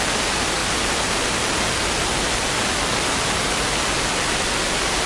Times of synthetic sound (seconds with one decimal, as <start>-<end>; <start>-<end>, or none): none